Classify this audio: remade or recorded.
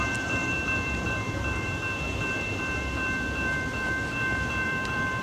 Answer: remade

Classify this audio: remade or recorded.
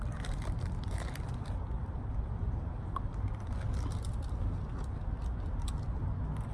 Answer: recorded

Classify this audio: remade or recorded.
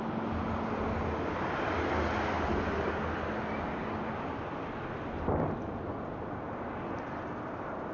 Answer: recorded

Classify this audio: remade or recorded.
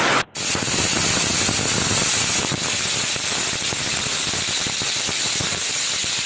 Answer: recorded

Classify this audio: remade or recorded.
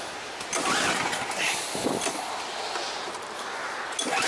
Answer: recorded